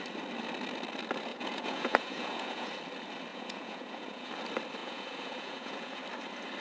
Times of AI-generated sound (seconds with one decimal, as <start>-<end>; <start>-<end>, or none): 1.3-2.7; 3.3-4.3; 4.8-6.0